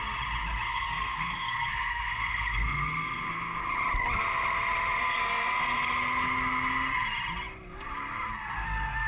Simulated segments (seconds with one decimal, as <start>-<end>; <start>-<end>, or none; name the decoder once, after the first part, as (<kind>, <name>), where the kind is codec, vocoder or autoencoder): 0.7-3.6 (codec, SNAC); 5.0-5.8